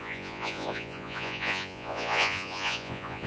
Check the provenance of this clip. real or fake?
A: fake